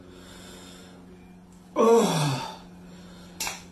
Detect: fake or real real